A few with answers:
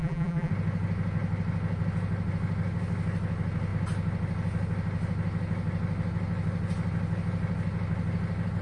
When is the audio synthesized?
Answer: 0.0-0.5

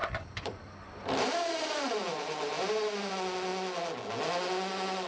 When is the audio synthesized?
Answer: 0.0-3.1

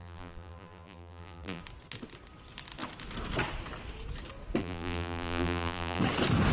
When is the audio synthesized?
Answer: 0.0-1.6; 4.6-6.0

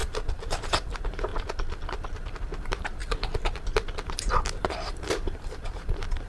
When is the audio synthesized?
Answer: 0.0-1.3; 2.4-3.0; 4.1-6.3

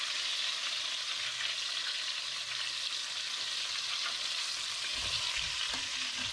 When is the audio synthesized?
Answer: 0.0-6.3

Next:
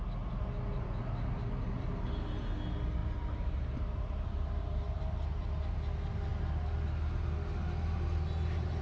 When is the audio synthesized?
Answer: 3.0-5.0

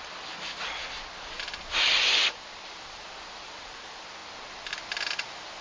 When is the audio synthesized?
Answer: none